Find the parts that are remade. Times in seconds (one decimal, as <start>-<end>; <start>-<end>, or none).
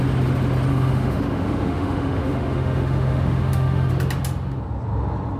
0.7-3.9